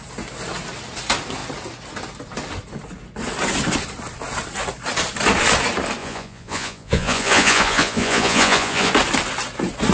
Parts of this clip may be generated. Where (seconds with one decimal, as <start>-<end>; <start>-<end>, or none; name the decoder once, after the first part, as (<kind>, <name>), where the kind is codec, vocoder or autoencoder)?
6.0-8.9 (vocoder, Vocos)